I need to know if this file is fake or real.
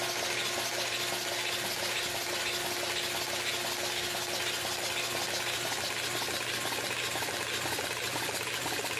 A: real